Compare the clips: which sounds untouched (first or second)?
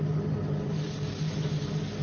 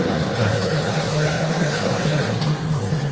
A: first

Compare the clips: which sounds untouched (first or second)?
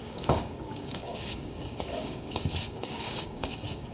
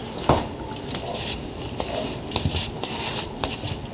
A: second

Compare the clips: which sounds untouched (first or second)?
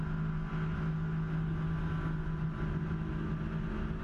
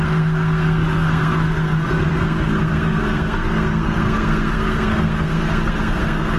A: first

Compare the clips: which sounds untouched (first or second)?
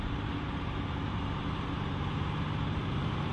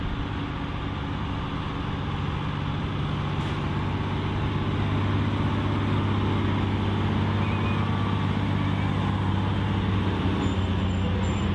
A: second